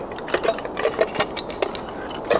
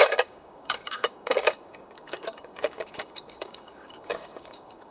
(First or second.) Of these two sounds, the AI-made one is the second